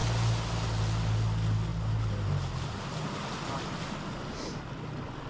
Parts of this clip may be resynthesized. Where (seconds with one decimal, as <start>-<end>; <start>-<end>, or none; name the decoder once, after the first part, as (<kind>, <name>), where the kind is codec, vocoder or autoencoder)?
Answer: none